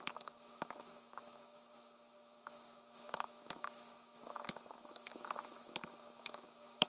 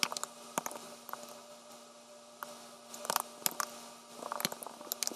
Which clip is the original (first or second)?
second